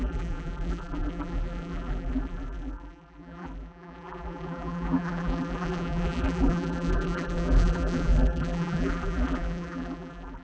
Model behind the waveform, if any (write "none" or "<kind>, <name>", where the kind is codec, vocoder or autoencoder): vocoder, BigVGAN v2